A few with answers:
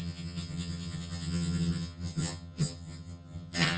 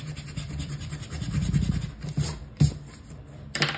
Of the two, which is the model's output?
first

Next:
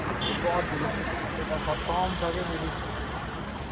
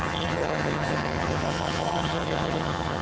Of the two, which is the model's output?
second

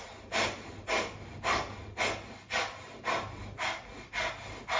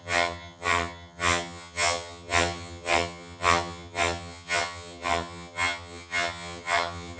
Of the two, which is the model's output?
second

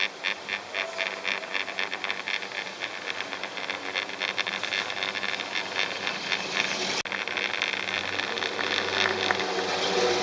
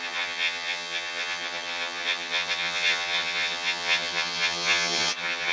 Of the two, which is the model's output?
second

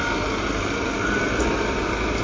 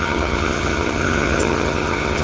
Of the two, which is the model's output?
second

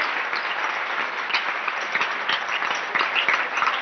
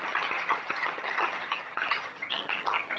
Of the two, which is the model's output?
second